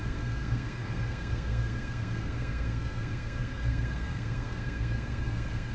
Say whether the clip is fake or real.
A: fake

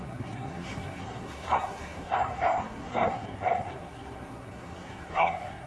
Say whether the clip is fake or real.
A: fake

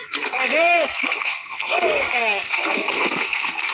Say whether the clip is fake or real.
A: fake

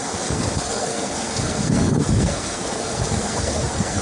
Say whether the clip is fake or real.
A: fake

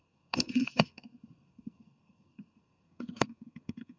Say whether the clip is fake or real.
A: fake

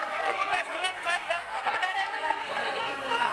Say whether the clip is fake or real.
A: fake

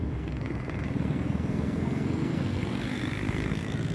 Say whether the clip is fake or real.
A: fake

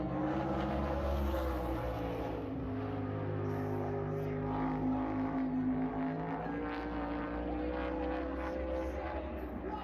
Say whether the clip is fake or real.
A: real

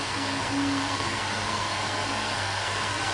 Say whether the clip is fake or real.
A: fake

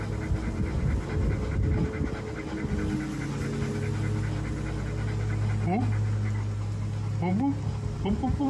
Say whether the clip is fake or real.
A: real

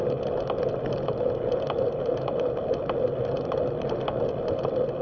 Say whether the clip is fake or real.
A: real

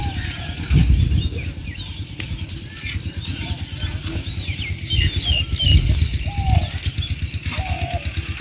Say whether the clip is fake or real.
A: real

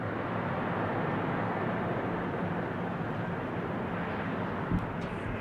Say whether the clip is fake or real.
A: real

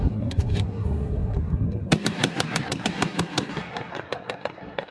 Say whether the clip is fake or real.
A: fake